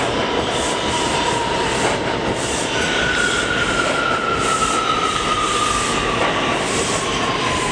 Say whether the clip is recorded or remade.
recorded